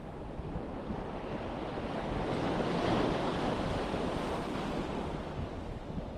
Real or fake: real